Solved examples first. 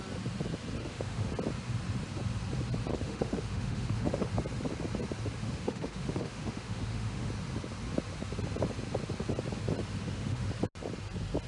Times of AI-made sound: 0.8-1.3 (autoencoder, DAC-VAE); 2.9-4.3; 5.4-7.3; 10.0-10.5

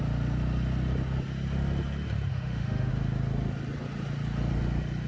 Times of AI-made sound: 2.3-2.9 (autoencoder, DAC-VAE)

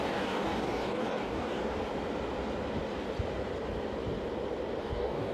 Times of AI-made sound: 0.0-1.6 (codec, DAC); 4.8-5.3